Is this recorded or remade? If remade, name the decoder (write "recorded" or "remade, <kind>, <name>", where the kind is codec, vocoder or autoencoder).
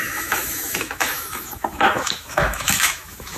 remade, autoencoder, DAC-VAE